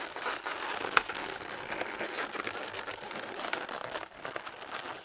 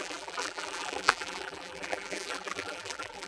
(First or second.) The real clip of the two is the first